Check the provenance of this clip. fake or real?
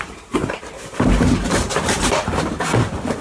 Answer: fake